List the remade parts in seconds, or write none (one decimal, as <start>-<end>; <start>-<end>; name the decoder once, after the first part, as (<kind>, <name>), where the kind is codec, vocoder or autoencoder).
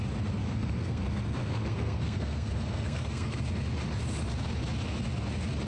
0.4-3.4 (codec, SNAC)